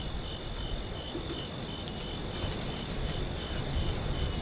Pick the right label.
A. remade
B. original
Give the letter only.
B